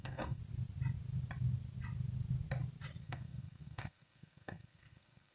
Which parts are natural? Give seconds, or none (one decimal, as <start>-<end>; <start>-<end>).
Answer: 0.4-3.0